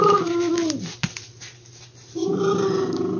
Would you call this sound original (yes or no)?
yes